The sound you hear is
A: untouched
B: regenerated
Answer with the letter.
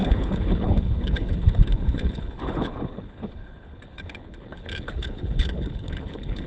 B